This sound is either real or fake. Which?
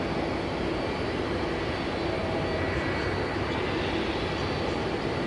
real